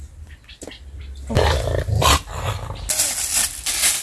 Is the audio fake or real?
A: real